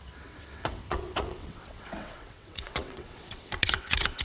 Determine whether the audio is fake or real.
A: fake